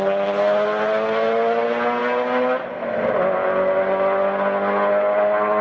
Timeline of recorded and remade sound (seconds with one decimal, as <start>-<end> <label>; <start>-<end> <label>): 0.0-5.6 recorded